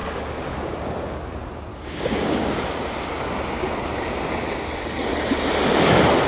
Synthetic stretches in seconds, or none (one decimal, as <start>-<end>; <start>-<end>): 0.0-1.2; 1.7-2.5